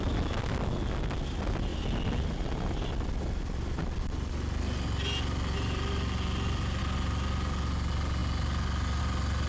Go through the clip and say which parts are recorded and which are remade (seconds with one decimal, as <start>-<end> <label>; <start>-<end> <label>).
0.0-9.5 recorded

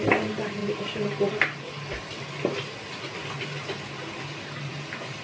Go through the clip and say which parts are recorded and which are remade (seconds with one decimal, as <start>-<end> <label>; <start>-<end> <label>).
0.0-5.2 recorded

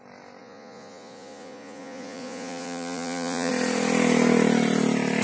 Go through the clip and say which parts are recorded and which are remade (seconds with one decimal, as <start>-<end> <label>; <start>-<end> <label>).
0.0-0.4 recorded; 0.4-3.5 remade; 3.5-5.2 recorded

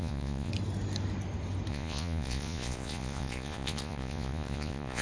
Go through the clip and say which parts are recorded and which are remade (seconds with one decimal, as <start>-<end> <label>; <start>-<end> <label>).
0.0-0.5 remade; 0.5-1.7 recorded; 1.7-5.0 remade